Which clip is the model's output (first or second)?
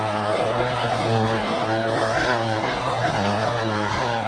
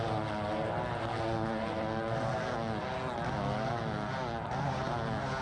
first